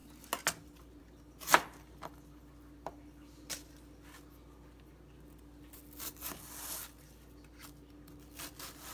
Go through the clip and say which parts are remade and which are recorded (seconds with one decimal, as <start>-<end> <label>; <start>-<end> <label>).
0.0-8.9 recorded